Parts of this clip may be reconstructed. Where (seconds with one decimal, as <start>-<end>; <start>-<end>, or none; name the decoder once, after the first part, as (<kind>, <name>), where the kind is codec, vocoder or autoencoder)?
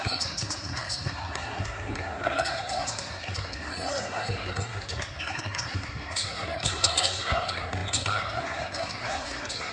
0.0-9.7 (codec, SNAC)